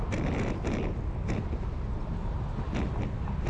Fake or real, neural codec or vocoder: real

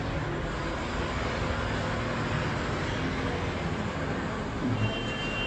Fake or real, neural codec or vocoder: fake, vocoder, BigVGAN v2